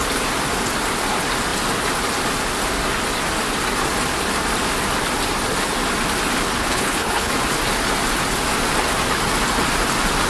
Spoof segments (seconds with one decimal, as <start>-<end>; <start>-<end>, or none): 6.6-7.3